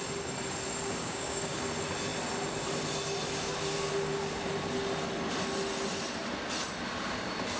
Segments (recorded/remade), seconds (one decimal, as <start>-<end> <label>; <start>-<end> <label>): 0.0-1.0 recorded; 1.0-1.6 remade; 1.6-7.6 recorded